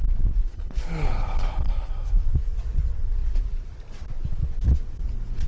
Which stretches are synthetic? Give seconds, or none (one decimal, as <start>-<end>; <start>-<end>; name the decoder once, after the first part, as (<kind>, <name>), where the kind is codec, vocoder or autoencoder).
0.5-1.9 (codec, HILCodec)